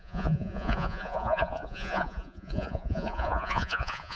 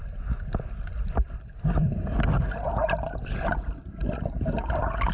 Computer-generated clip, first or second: first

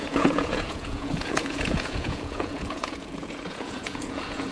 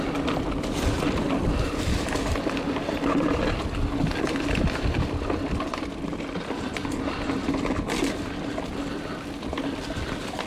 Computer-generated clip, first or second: first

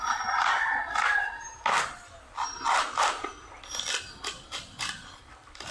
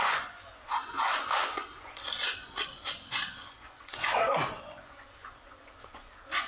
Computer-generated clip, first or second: second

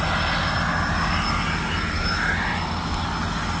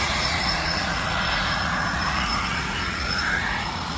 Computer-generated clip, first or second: second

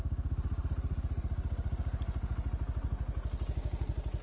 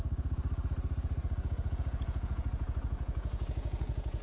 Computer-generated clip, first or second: second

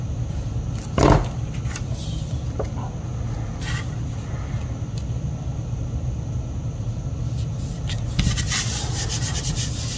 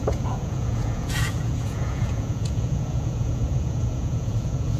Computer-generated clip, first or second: second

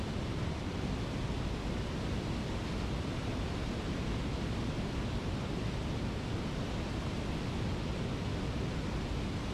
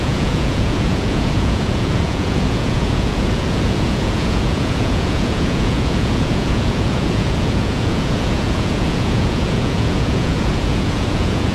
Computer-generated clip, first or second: second